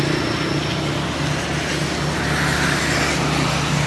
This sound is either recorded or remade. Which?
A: recorded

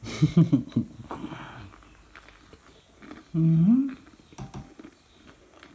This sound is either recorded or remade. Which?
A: recorded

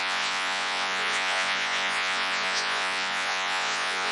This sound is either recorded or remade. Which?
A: remade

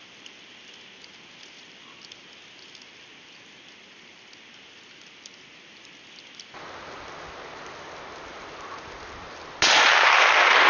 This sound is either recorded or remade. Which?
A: recorded